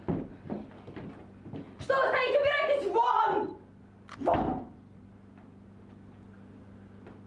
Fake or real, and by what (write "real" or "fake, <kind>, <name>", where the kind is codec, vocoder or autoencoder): real